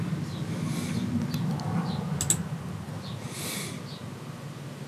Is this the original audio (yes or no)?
yes